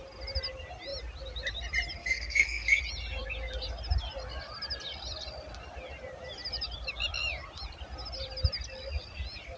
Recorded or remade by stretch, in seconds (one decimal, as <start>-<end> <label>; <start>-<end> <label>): 0.0-2.0 recorded; 2.0-2.8 remade; 2.8-9.6 recorded